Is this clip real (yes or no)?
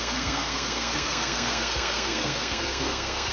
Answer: no